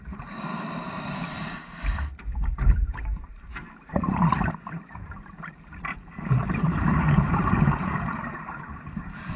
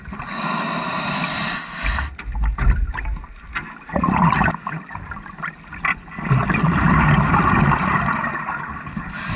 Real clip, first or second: second